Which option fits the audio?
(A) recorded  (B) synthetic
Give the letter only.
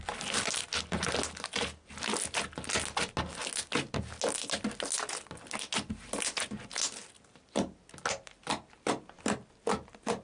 A